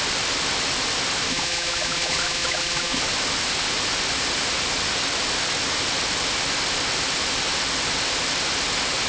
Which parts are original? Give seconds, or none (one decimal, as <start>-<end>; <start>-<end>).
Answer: 0.0-1.3; 3.0-9.1